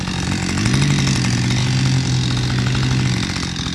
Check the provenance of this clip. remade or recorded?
recorded